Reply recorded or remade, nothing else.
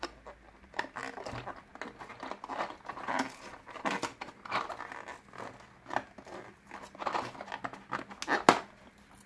recorded